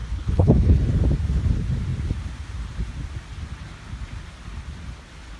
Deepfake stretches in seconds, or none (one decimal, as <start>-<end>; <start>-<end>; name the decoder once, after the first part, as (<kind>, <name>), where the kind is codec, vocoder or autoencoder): 0.0-0.8 (codec, HILCodec)